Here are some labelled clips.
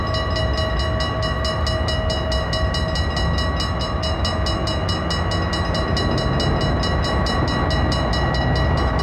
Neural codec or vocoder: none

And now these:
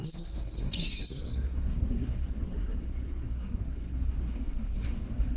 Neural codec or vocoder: codec, SNAC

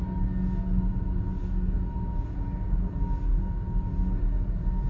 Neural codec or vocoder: none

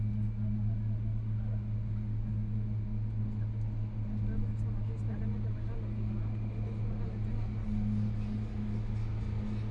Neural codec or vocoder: none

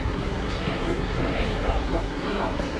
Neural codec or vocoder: codec, SNAC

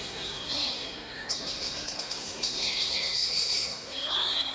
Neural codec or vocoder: codec, SNAC